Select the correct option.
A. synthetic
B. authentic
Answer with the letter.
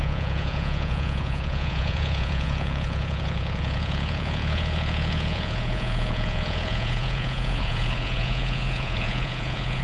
A